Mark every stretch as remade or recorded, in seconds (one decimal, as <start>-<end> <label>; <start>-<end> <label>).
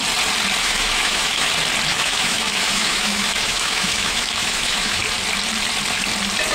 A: 0.0-0.6 recorded; 0.6-1.5 remade; 1.5-1.9 recorded; 1.9-5.0 remade; 5.0-6.5 recorded